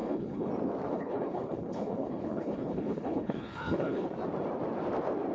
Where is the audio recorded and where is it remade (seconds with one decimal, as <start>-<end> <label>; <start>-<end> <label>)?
0.0-0.5 remade; 0.5-0.9 recorded; 0.9-4.1 remade; 4.1-5.3 recorded